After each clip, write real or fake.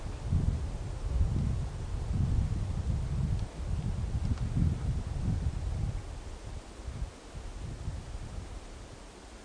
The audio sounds real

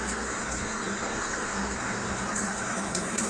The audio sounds fake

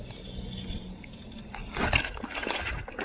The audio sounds real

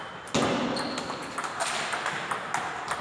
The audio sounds real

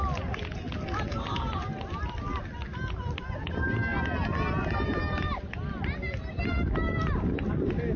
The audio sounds real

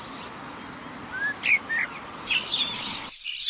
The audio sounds real